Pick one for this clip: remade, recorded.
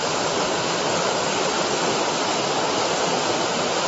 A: recorded